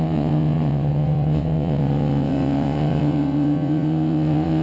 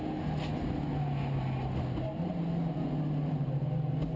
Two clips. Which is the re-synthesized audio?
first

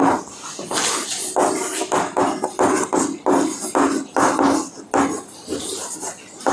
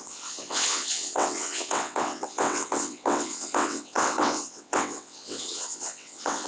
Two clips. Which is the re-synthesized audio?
second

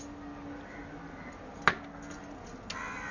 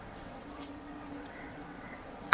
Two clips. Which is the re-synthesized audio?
second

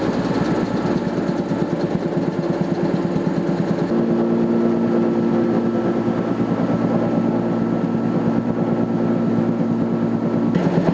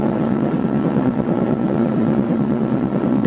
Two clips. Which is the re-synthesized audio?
second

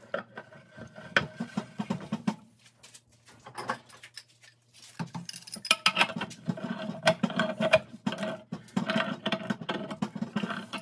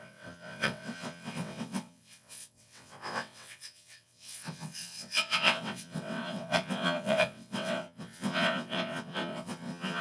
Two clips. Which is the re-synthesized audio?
second